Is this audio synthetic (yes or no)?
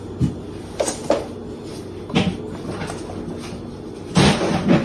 no